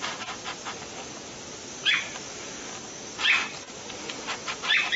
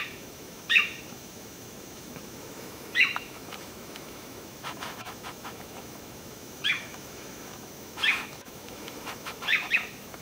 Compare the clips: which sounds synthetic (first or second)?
second